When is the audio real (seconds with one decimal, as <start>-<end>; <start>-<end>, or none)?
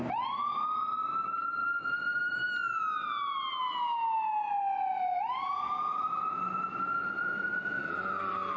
0.0-8.6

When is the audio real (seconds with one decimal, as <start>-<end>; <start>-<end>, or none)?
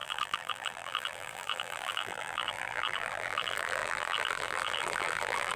none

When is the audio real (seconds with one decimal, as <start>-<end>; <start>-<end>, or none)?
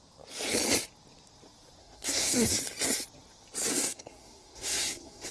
0.0-1.8; 2.5-3.7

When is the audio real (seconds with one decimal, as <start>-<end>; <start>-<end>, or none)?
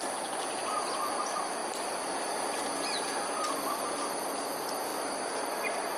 0.0-6.0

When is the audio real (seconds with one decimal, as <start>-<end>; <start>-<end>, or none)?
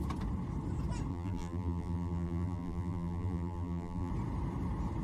0.0-1.1; 4.1-5.0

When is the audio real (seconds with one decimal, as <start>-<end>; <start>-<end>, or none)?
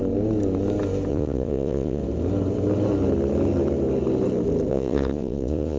0.0-1.1; 2.0-4.7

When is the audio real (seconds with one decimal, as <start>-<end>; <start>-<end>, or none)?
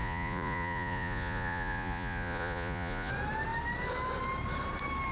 3.1-5.1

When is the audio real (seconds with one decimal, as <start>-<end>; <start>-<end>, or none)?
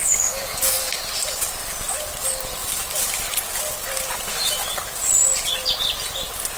0.9-6.6